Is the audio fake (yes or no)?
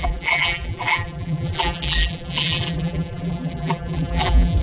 yes